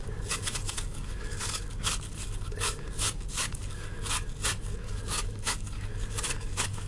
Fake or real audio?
fake